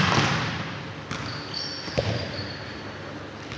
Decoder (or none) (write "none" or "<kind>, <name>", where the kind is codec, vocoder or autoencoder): none